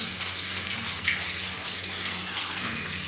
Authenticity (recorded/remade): remade